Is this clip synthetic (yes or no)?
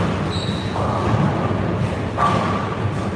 no